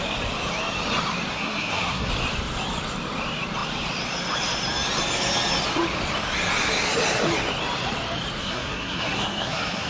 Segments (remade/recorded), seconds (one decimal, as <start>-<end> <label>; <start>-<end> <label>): 0.0-1.3 recorded; 1.3-2.1 remade; 2.1-8.4 recorded; 8.4-9.9 remade